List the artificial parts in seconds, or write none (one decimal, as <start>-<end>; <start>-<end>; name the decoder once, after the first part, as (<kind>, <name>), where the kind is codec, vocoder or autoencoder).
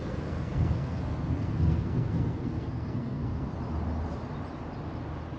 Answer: 0.0-3.5 (codec, SNAC)